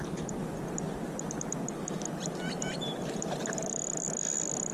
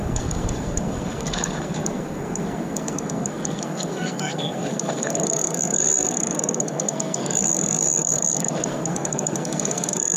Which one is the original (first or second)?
first